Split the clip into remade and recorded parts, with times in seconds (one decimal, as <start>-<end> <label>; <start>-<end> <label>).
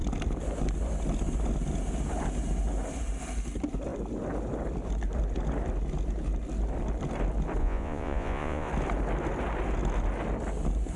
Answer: 0.0-7.6 recorded; 7.6-8.7 remade; 8.7-11.0 recorded